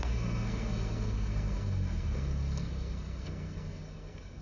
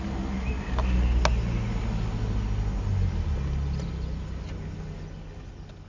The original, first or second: second